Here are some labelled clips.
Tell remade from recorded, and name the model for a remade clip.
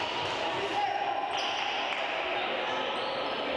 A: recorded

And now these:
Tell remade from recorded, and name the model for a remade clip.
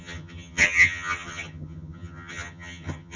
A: remade, vocoder, HiFi-GAN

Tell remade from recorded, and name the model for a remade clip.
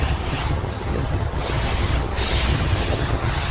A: remade, vocoder, HiFi-GAN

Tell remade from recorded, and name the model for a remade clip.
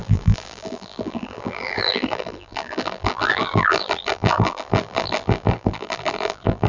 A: remade, vocoder, BigVGAN v2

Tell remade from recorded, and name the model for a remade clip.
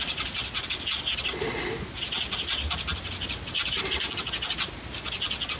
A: recorded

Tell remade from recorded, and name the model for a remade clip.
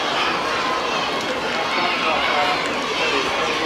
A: recorded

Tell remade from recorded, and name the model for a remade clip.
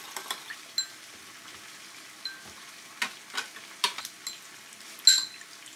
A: recorded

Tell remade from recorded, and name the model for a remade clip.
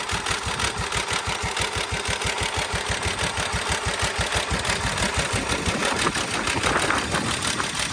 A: recorded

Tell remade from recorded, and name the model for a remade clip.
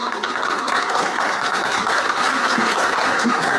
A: remade, codec, SNAC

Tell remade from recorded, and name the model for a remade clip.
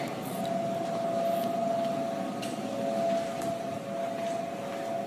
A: recorded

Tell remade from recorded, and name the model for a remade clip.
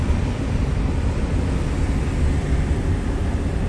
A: recorded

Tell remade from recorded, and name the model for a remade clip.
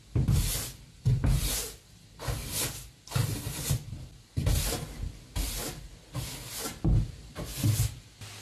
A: recorded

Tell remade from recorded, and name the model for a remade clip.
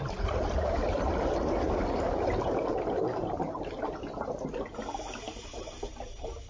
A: recorded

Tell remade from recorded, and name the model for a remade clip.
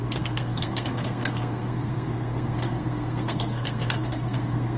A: remade, codec, SNAC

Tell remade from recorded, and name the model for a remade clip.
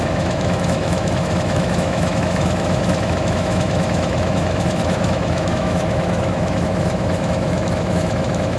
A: remade, autoencoder, DAC-VAE